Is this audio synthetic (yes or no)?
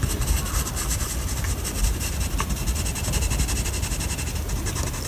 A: no